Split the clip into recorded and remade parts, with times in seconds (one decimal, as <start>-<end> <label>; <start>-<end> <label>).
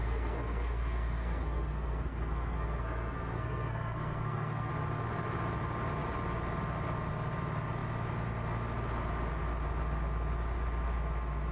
0.0-4.7 remade; 4.7-11.5 recorded